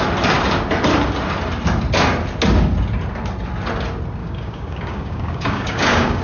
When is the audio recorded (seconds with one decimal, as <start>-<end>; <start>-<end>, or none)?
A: 0.0-4.2